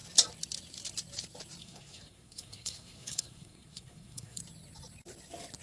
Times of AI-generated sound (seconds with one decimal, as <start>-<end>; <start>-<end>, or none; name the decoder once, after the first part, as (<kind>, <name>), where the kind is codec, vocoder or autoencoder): 1.6-4.4 (codec, SNAC)

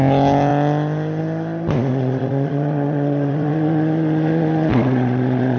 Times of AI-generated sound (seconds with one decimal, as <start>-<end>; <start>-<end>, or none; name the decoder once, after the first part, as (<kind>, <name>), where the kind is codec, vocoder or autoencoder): 1.9-5.6 (vocoder, Vocos)

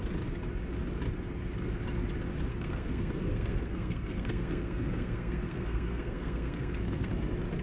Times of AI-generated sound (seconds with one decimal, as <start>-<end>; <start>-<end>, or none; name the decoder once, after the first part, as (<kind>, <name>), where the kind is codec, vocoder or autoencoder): 2.5-7.1 (codec, SNAC)